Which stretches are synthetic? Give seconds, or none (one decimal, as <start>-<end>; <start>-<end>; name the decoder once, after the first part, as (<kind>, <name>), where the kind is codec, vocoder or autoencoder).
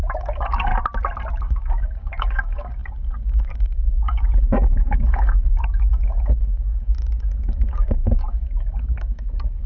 0.0-0.7 (codec, DAC); 1.4-9.7